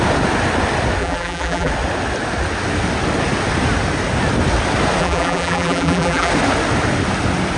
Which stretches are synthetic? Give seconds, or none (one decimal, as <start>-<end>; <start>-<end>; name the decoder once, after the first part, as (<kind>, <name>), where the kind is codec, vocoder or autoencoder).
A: 1.0-1.7 (vocoder, BigVGAN v2); 5.0-6.3